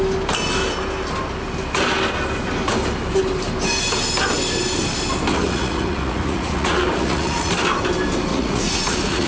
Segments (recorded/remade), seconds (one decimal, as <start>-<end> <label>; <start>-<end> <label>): 0.0-5.3 recorded; 5.3-7.5 remade; 7.5-8.3 recorded; 8.3-9.3 remade

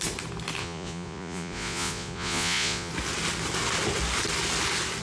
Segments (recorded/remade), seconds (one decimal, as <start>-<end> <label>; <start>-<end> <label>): 0.0-0.6 recorded; 0.6-2.9 remade; 2.9-5.0 recorded

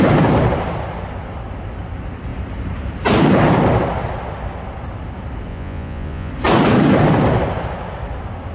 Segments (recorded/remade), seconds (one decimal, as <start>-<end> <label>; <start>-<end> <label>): 0.0-5.5 recorded; 5.5-6.3 remade; 6.3-8.5 recorded

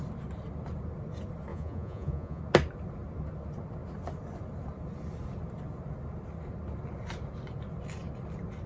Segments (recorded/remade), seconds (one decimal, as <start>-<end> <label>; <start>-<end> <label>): 0.0-1.5 recorded; 1.5-2.4 remade; 2.4-8.7 recorded

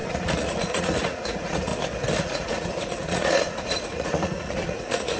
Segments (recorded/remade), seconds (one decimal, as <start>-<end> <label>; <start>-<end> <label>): 0.0-1.7 remade; 1.7-2.2 recorded; 2.2-5.2 remade

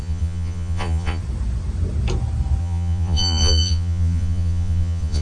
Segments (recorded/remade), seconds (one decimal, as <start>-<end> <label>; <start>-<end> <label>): 0.0-1.2 remade; 1.2-2.6 recorded; 2.6-5.2 remade

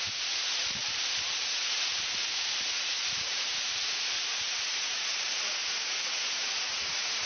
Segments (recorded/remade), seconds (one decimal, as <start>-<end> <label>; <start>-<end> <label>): 0.0-0.8 remade; 0.8-1.4 recorded; 1.4-7.3 remade

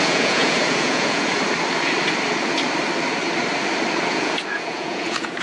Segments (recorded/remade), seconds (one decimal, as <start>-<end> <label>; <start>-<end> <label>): 0.0-1.3 remade; 1.3-4.1 recorded; 4.1-5.4 remade